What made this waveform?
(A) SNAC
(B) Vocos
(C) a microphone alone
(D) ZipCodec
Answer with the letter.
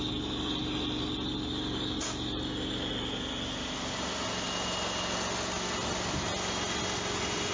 C